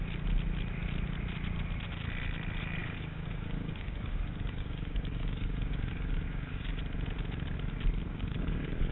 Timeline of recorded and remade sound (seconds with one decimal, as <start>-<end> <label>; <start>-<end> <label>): 0.0-2.8 recorded; 2.8-6.8 remade; 6.8-8.1 recorded; 8.1-8.9 remade